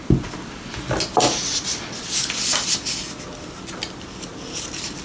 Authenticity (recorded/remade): recorded